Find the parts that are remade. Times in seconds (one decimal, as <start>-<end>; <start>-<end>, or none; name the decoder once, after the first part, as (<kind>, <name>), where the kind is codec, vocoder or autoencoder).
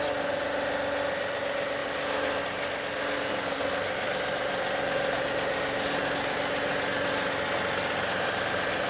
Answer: none